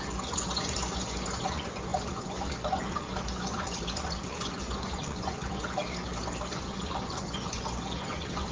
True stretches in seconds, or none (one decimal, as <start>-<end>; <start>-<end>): 5.8-6.5